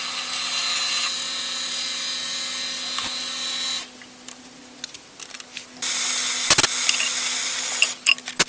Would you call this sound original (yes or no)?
yes